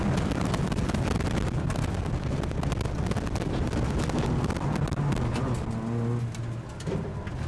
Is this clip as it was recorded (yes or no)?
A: yes